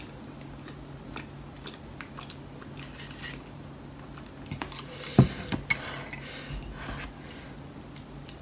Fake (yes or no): no